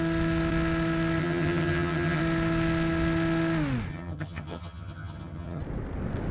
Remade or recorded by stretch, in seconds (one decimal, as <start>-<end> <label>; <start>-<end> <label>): 0.0-1.2 recorded; 1.2-2.2 remade; 2.2-3.9 recorded; 3.9-5.6 remade; 5.6-6.3 recorded